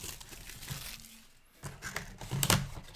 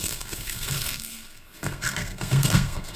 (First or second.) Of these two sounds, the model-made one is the second